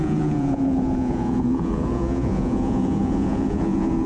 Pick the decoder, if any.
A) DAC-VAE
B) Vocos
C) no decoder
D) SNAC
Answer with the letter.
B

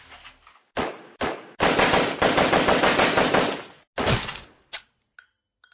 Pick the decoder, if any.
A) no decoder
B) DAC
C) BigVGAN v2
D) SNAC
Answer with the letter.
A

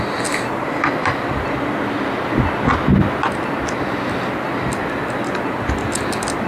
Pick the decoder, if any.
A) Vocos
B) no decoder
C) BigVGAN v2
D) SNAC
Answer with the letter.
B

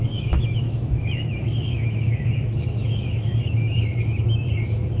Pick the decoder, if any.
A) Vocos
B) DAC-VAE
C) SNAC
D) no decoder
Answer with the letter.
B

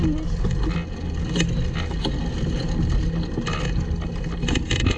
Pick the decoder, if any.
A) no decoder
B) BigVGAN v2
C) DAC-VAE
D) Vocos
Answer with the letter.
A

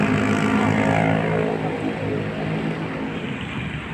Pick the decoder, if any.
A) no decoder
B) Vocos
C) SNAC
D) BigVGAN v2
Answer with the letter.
A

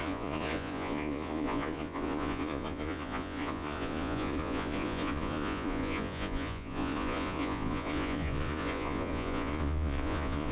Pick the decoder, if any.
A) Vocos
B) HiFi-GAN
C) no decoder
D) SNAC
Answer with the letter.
A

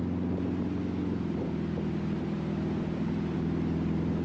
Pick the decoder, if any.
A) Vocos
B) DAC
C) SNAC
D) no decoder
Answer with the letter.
D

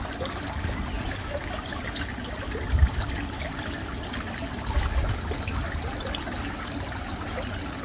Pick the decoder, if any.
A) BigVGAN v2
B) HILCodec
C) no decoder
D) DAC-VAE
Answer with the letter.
C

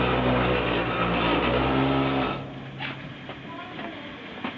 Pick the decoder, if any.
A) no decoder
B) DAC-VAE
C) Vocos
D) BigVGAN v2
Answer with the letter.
A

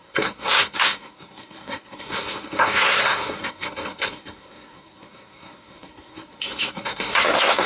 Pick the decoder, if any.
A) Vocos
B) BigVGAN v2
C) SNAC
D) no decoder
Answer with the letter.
C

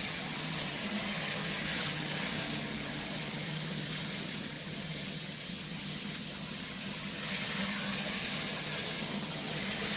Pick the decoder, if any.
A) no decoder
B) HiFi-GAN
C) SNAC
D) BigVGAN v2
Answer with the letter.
B